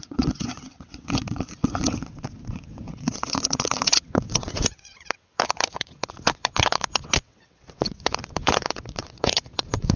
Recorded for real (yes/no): no